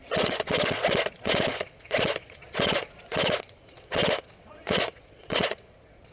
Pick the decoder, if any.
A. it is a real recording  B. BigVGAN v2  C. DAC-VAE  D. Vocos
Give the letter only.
D